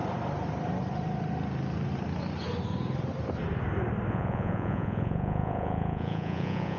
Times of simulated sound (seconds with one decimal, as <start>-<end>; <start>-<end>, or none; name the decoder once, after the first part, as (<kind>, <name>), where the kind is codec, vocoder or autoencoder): 4.1-6.8 (vocoder, Vocos)